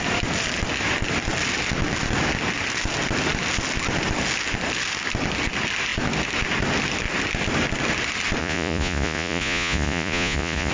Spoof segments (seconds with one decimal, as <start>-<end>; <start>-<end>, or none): 8.4-10.7